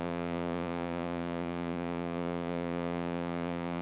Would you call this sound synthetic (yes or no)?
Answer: yes